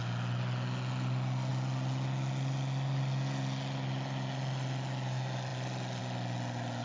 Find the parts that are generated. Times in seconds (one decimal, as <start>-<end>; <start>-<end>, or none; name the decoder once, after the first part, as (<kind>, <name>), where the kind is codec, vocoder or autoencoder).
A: none